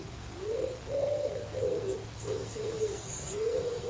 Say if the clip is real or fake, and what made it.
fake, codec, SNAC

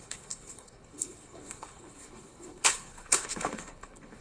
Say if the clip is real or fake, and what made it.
fake, codec, HILCodec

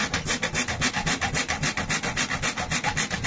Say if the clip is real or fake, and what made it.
real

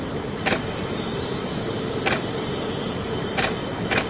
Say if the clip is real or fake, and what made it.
real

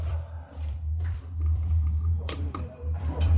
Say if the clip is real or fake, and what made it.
fake, vocoder, BigVGAN v2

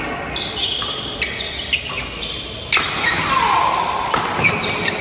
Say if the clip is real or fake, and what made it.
real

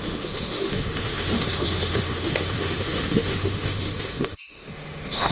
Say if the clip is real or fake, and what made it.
fake, autoencoder, DAC-VAE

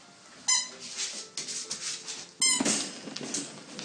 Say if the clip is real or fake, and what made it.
real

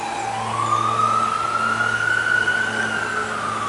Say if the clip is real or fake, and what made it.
real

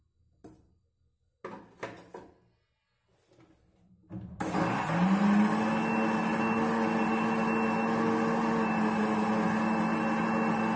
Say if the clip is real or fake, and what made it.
real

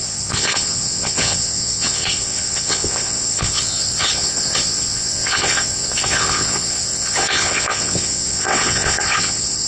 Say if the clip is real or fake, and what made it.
fake, vocoder, WaveNeXt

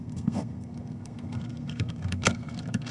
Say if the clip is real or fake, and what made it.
fake, codec, SNAC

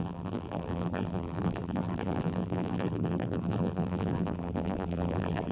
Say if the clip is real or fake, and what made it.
fake, vocoder, BigVGAN v2